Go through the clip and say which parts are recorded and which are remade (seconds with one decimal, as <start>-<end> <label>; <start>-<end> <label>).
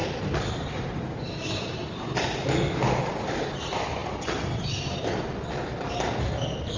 0.0-6.8 recorded